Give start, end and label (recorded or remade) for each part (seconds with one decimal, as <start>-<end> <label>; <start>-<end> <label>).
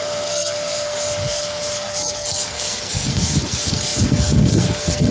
0.0-5.1 remade